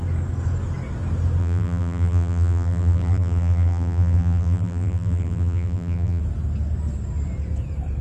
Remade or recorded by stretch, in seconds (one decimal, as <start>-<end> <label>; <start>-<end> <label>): 0.0-1.4 recorded; 1.4-6.2 remade; 6.2-8.0 recorded